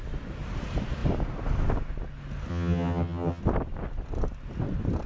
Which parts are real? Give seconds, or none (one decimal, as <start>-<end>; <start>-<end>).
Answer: 0.0-2.5; 3.4-5.1